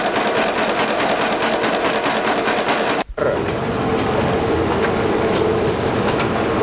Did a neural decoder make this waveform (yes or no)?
no